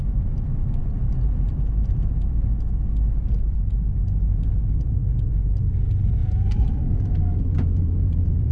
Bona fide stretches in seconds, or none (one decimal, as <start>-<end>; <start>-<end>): 2.4-4.4; 5.0-5.7